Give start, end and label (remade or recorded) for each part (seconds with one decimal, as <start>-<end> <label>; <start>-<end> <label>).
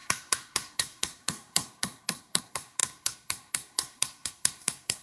0.0-5.0 remade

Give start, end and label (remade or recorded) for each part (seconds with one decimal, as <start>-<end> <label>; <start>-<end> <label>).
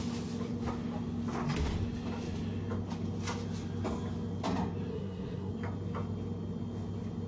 0.0-4.9 recorded; 4.9-5.5 remade; 5.5-7.3 recorded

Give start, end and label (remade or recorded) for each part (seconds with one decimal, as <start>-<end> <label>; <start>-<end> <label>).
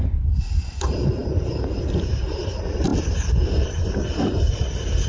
0.0-5.1 recorded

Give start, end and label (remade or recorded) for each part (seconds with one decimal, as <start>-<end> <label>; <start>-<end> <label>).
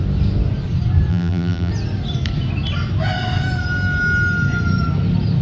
0.0-1.1 recorded; 1.1-1.7 remade; 1.7-5.4 recorded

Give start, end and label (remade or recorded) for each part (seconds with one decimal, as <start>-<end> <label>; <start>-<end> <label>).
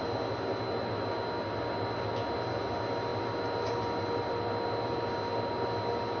0.0-6.2 recorded